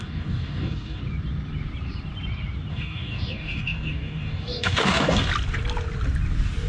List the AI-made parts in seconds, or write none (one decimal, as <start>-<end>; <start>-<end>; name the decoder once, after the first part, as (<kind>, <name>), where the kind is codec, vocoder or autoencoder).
0.0-1.0 (codec, DAC); 2.7-5.3